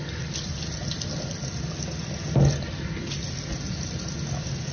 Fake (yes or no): no